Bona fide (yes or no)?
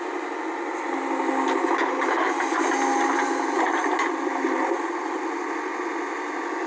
yes